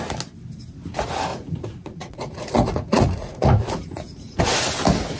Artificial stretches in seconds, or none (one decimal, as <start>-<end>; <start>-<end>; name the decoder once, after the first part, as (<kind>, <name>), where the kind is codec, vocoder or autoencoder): 1.3-4.4 (vocoder, Vocos)